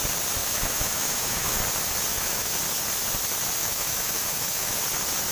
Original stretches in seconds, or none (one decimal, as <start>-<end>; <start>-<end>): 0.0-0.4; 1.6-2.1; 2.6-3.6; 4.8-5.3